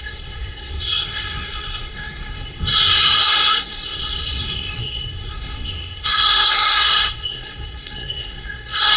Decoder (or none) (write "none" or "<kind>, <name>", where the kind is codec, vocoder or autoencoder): codec, SNAC